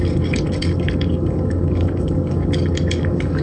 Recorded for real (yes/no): no